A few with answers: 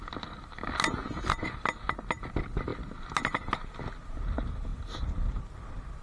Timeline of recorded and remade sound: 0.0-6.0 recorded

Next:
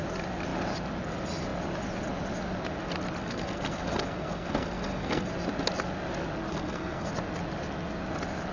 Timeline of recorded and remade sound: 0.0-3.2 recorded; 3.2-5.3 remade; 5.3-6.5 recorded; 6.5-7.1 remade; 7.1-8.5 recorded

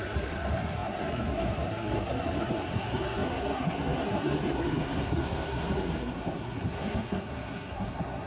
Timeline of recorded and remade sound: 0.0-8.3 remade

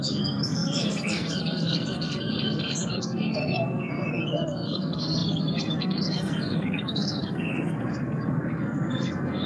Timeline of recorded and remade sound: 0.0-9.5 remade